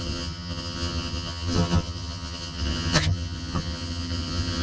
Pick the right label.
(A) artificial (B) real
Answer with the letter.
A